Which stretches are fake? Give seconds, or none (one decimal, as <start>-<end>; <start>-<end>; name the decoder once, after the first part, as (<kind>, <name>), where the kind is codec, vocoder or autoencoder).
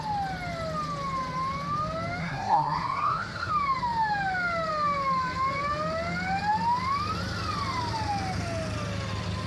2.2-3.5 (codec, SNAC)